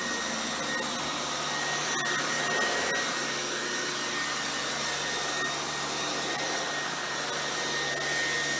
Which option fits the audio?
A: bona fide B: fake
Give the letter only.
A